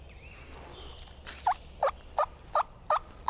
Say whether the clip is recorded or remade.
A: recorded